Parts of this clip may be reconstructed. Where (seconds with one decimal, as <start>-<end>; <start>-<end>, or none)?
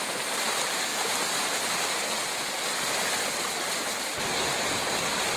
0.9-3.2